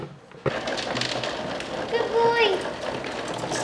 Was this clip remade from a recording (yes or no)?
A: no